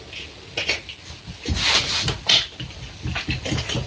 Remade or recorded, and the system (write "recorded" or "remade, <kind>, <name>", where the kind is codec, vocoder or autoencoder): recorded